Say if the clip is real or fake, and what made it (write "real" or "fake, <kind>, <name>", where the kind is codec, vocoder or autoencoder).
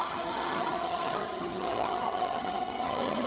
fake, vocoder, HiFi-GAN